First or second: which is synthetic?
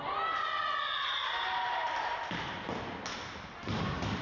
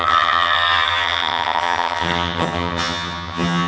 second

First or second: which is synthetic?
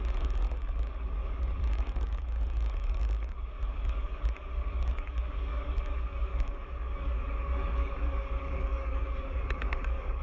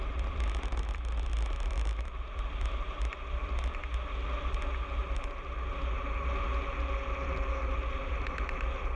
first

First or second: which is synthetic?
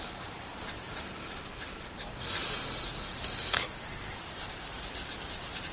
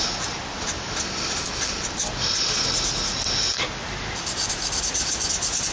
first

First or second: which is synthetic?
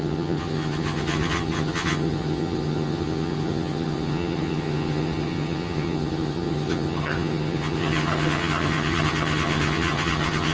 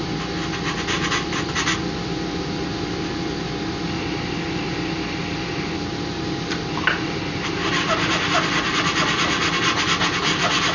first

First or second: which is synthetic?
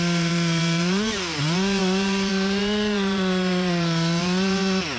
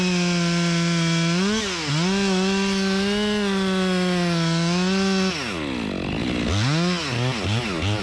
first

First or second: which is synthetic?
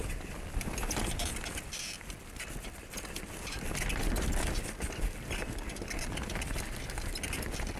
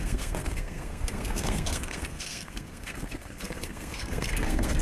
second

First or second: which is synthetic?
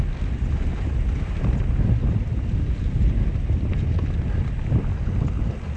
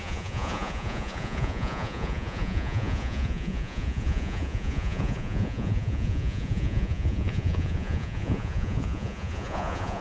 second